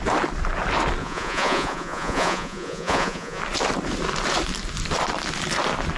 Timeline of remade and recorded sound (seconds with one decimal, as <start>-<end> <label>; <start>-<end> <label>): 0.0-1.0 recorded; 1.0-3.4 remade; 3.4-6.0 recorded